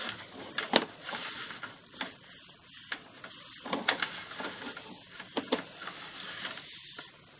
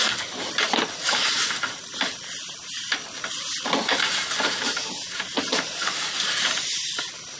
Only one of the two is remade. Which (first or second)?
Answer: second